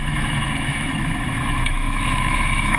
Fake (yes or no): yes